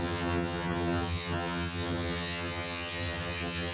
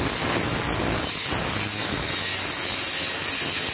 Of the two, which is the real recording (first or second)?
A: second